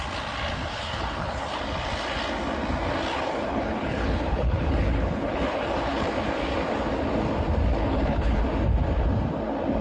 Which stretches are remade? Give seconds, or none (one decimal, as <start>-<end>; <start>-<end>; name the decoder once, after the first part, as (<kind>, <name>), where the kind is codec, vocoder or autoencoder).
0.7-1.6 (codec, HILCodec); 3.1-6.1; 7.8-8.4